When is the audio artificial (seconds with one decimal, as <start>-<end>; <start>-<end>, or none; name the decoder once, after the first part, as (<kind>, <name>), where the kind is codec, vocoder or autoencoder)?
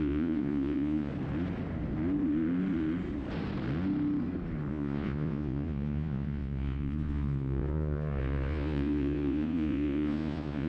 0.0-1.1 (vocoder, Vocos); 4.7-10.7